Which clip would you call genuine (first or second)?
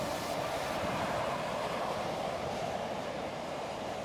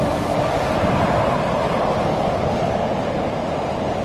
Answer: second